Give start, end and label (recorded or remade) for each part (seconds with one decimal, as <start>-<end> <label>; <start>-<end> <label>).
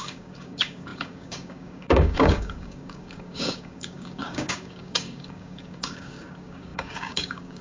0.0-7.6 remade